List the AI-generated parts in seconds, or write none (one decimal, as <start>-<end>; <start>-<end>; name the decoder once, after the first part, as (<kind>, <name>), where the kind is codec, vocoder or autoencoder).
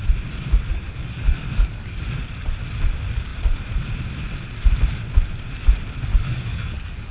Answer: 0.7-2.0 (codec, DAC); 6.1-7.1